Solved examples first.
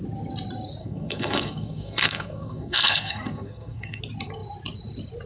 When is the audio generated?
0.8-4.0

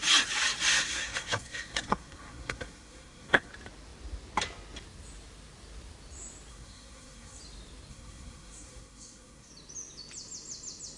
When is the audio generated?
0.7-3.5; 6.5-7.4; 7.9-9.5

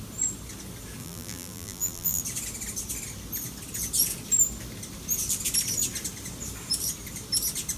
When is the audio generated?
1.0-2.2

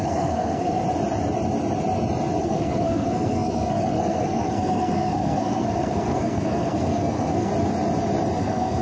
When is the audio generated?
0.0-0.8; 2.4-7.5; 8.4-8.8

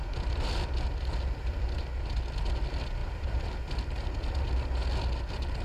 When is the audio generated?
3.0-3.6

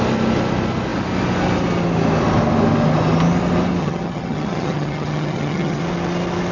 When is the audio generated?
3.8-5.8

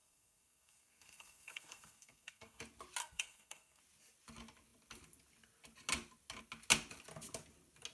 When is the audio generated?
0.0-2.6; 3.0-3.8

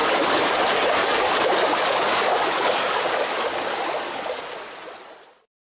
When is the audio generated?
0.0-0.5; 1.0-4.4